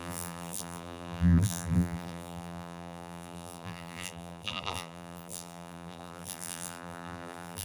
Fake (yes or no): yes